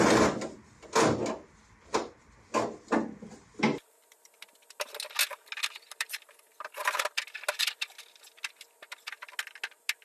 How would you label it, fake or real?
real